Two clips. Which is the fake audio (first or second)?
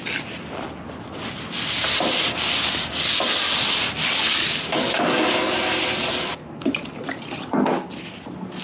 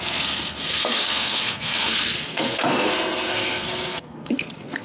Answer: second